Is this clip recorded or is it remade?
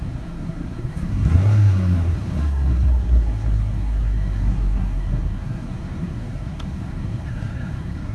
remade